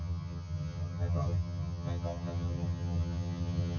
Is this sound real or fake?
fake